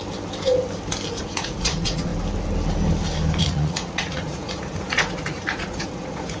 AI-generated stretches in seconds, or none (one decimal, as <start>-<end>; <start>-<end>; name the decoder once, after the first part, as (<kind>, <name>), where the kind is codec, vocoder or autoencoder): 1.2-2.1 (vocoder, Vocos); 3.4-6.4